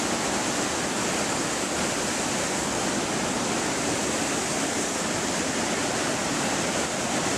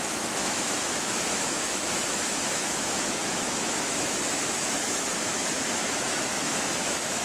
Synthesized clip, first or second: second